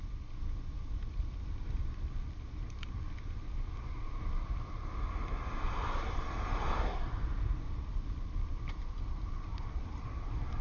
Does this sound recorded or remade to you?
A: recorded